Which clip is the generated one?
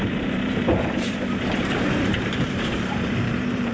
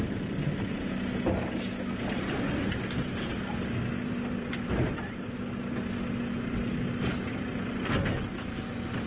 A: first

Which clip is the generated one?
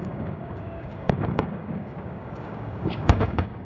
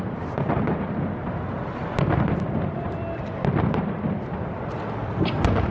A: first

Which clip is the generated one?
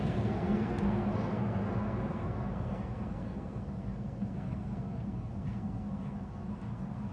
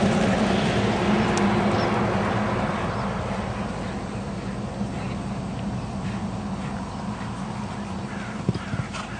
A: first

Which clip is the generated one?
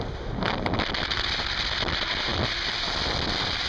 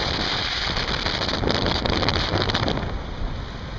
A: second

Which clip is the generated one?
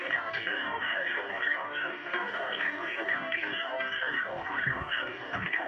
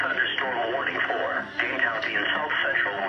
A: first